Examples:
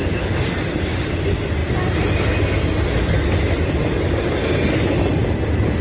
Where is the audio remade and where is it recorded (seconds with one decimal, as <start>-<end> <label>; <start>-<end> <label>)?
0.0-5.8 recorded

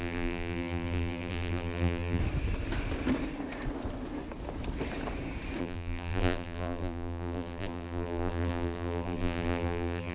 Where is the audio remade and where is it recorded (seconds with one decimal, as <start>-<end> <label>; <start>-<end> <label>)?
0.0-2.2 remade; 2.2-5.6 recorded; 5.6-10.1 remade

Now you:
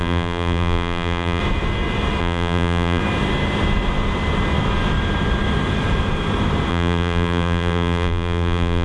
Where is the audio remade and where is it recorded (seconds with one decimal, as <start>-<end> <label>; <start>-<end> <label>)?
0.0-1.4 remade; 1.4-2.2 recorded; 2.2-3.0 remade; 3.0-6.7 recorded; 6.7-8.8 remade

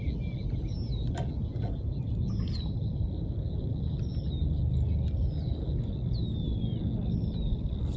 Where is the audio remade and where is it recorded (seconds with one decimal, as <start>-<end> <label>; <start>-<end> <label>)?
0.0-8.0 recorded

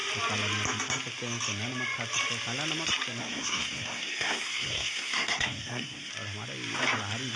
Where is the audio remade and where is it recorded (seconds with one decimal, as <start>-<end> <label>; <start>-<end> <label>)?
0.0-3.2 recorded; 3.2-6.1 remade; 6.1-7.4 recorded